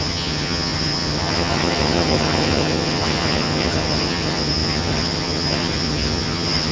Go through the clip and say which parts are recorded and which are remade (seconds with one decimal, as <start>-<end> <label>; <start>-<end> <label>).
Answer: 0.0-6.7 remade